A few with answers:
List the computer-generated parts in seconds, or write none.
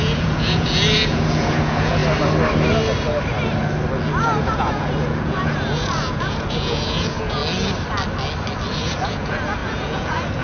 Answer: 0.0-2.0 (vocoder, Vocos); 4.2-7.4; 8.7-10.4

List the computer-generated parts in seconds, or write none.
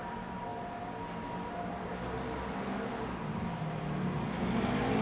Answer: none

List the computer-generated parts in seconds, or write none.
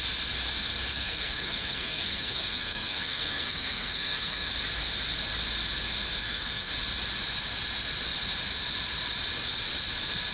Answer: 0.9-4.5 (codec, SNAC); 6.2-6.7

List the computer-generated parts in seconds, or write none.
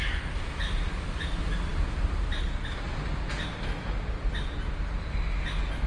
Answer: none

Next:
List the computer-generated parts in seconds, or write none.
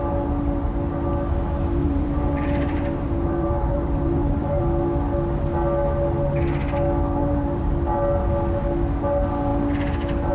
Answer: 1.8-4.6 (vocoder, BigVGAN v2); 7.2-7.7